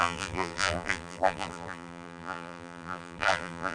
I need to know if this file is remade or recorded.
remade